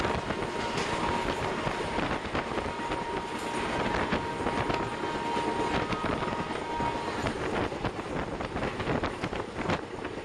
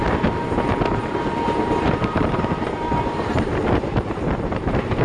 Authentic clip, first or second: first